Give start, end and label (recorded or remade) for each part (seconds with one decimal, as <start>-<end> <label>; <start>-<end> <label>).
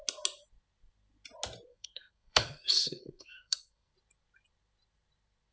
0.0-1.7 recorded; 1.7-3.9 remade; 3.9-5.5 recorded